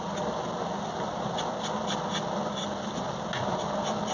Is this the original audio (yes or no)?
yes